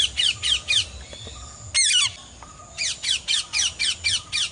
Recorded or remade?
recorded